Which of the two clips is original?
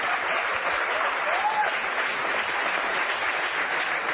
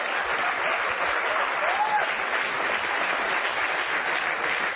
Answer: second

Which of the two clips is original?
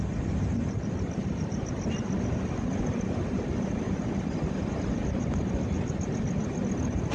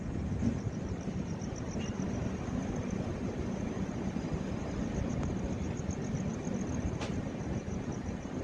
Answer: second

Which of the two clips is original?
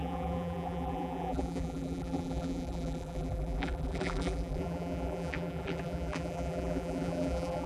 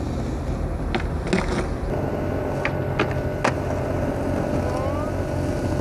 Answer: second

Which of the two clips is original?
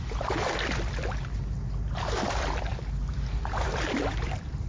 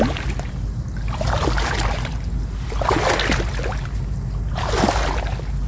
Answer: second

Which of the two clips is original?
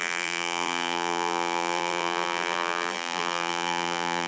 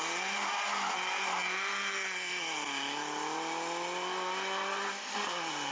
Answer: second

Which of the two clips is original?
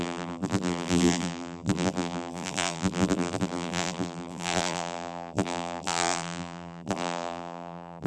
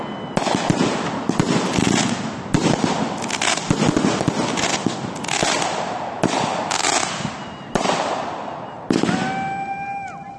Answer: second